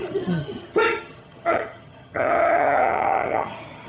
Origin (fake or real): fake